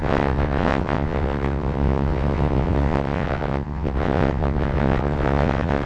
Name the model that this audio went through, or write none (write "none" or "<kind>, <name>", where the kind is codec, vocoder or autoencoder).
vocoder, WaveNeXt